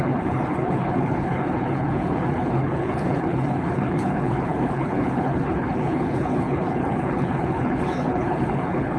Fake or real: fake